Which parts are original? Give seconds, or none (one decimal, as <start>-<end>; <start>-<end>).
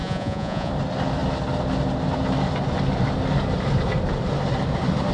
0.7-5.1